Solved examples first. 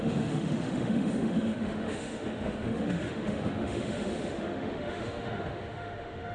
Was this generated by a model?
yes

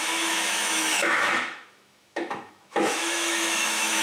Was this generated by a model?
yes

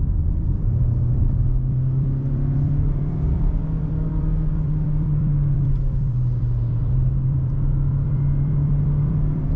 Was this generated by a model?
yes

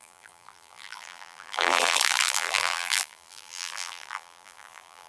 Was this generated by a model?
yes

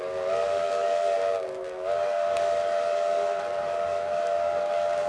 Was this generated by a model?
yes